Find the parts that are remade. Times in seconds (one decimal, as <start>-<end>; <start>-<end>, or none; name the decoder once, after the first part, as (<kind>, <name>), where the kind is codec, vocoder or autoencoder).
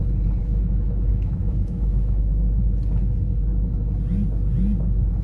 0.4-2.6 (autoencoder, DAC-VAE)